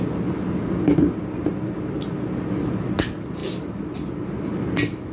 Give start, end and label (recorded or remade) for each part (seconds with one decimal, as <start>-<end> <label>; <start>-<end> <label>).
0.0-5.1 recorded